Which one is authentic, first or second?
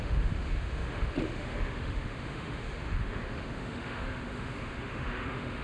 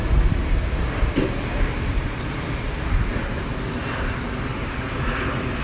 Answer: second